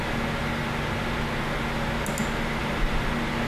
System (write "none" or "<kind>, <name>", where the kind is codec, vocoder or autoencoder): none